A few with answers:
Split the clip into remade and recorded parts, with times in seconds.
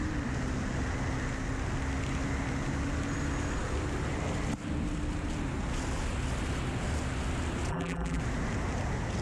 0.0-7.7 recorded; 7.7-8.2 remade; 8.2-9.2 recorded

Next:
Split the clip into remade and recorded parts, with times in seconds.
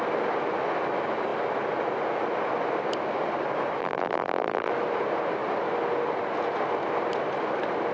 0.0-3.8 recorded; 3.8-4.7 remade; 4.7-7.9 recorded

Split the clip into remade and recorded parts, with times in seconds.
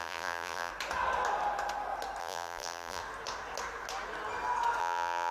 0.0-0.7 remade; 0.7-2.2 recorded; 2.2-3.0 remade; 3.0-4.8 recorded; 4.8-5.3 remade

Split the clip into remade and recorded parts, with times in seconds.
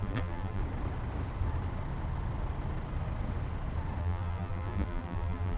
0.0-0.6 remade; 0.6-4.0 recorded; 4.0-5.6 remade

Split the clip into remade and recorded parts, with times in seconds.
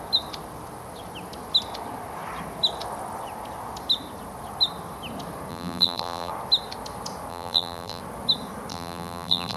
0.0-5.5 recorded; 5.5-6.3 remade; 6.3-7.3 recorded; 7.3-8.0 remade; 8.0-8.7 recorded; 8.7-9.6 remade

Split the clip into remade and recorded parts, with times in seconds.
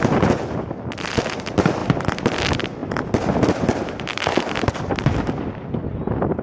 0.0-6.4 recorded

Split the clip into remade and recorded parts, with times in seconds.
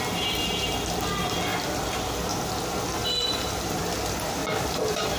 0.0-1.5 recorded; 1.5-2.3 remade; 2.3-3.0 recorded; 3.0-3.8 remade; 3.8-4.4 recorded; 4.4-5.2 remade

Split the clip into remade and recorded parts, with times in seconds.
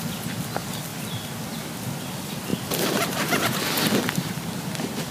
0.0-2.5 recorded; 2.5-3.4 remade; 3.4-5.1 recorded